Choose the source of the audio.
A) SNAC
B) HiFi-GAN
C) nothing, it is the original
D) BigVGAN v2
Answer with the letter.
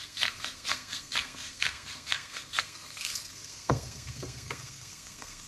A